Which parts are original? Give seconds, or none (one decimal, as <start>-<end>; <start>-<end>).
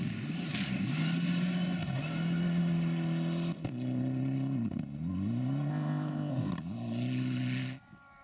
0.0-5.7; 6.5-8.2